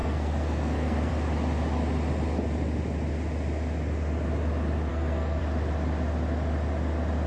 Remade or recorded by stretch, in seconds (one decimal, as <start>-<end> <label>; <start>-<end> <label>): 0.0-1.1 remade; 1.1-4.9 recorded; 4.9-5.4 remade; 5.4-7.3 recorded